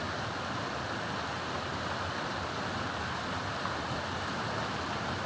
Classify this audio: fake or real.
real